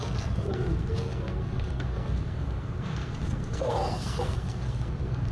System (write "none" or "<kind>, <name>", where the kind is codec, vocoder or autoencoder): codec, SNAC